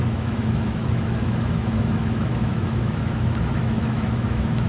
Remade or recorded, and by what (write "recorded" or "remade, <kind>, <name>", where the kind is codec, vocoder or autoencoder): remade, autoencoder, DAC-VAE